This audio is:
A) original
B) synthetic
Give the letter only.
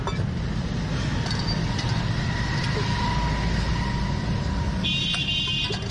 A